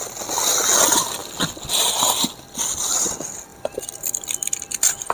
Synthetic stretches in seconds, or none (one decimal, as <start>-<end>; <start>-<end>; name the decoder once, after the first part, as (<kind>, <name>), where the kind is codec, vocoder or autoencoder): none

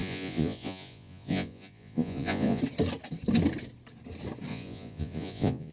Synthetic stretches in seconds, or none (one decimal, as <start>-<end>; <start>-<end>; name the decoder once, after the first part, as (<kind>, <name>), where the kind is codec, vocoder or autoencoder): 0.0-2.6 (vocoder, Vocos); 4.5-5.7

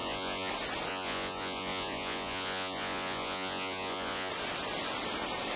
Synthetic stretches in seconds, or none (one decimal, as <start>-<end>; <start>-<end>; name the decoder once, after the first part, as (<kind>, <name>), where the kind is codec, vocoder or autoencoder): 0.0-0.5 (vocoder, Vocos); 0.9-4.3

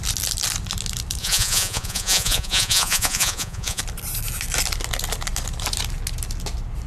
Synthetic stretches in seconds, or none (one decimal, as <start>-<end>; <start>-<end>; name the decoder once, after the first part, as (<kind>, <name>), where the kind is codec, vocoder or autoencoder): 1.2-3.8 (vocoder, Vocos)

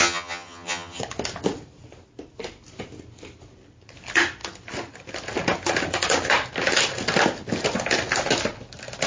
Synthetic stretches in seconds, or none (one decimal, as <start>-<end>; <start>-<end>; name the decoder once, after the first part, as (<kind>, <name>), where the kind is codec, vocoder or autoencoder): 0.0-1.0 (vocoder, HiFi-GAN)

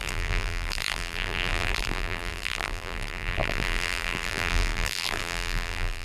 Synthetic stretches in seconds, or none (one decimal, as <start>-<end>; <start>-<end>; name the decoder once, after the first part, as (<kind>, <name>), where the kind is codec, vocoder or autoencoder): 0.0-6.0 (vocoder, BigVGAN v2)

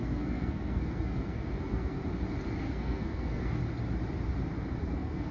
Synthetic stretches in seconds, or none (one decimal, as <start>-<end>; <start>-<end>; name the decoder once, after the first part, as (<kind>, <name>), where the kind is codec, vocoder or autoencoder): 0.0-2.0 (codec, SNAC); 2.6-3.6; 4.8-5.3